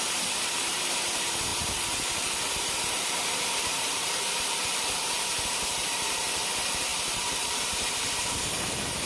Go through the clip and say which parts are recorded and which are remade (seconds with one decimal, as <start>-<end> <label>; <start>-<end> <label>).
0.0-9.1 remade